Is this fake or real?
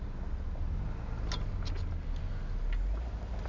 real